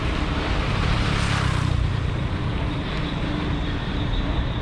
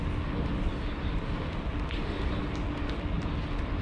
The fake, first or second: first